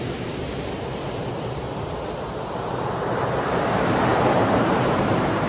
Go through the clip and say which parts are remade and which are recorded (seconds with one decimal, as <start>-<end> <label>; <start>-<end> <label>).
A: 0.0-5.5 remade